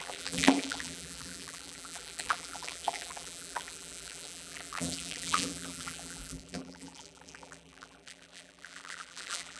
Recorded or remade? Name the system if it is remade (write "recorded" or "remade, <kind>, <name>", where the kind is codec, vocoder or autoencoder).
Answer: remade, vocoder, BigVGAN v2